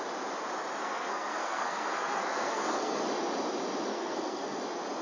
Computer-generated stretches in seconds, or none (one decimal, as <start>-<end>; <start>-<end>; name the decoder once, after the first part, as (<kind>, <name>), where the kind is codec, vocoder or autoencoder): 0.8-3.0 (codec, SNAC); 3.9-4.6